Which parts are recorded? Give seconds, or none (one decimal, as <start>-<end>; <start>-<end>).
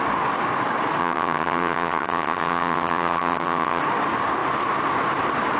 0.0-1.0; 3.8-5.6